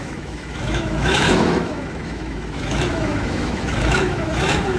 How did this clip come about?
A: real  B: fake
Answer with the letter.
B